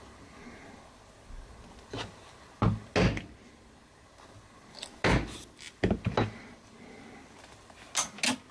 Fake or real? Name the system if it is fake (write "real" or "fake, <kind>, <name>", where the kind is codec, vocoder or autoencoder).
real